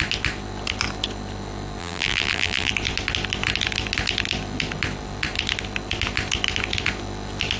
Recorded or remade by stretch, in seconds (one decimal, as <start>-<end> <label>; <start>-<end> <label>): 0.0-1.8 recorded; 1.8-2.7 remade; 2.7-7.6 recorded